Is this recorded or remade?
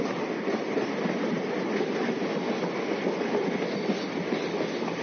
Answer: recorded